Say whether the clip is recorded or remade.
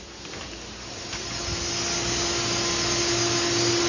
recorded